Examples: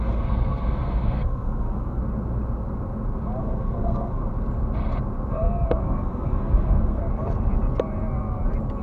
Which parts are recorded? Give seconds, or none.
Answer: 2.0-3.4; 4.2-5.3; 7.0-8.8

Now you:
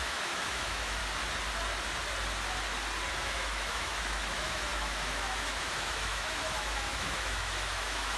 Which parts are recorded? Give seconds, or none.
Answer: 1.0-3.1

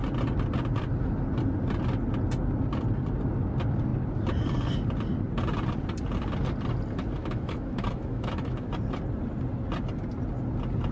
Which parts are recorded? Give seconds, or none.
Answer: 0.0-7.2; 8.7-10.9

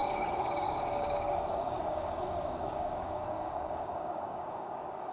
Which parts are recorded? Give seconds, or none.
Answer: none

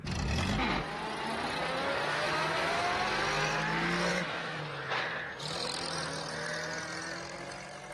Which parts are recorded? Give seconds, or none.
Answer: 0.0-2.1; 2.9-4.1; 4.6-7.9

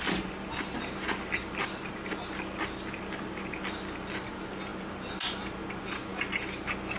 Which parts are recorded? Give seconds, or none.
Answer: 0.0-7.0